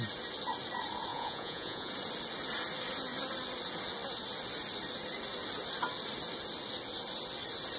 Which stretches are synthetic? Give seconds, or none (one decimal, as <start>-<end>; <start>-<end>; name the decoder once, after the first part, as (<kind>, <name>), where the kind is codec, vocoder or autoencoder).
1.1-1.9 (vocoder, Vocos)